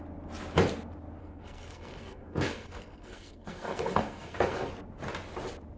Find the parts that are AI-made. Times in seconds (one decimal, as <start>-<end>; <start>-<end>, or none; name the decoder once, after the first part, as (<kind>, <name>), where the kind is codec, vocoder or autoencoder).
1.2-4.7 (codec, SNAC)